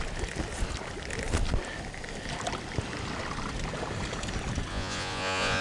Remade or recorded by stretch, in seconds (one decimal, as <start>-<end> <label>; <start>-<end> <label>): 0.0-4.7 recorded; 4.7-5.6 remade